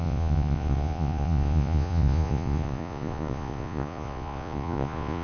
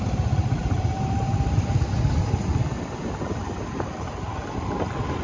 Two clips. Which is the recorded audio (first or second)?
second